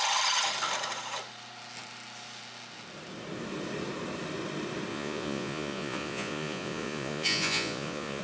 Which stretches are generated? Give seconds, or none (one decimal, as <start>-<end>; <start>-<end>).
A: 4.9-8.2